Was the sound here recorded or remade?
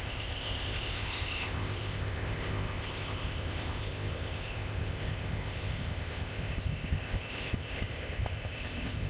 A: remade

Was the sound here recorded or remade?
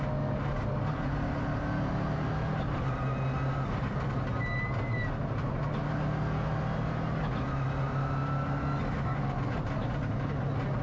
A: recorded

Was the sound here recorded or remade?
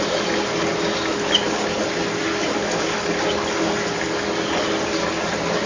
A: recorded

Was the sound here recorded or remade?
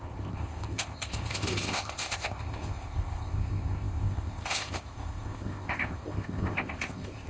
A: remade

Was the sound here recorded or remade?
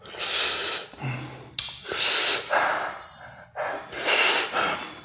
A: recorded